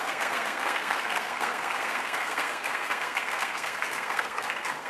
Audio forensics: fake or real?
fake